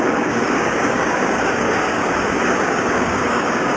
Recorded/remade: remade